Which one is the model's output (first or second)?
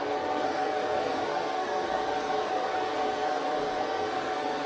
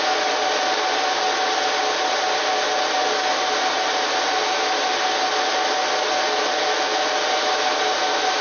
first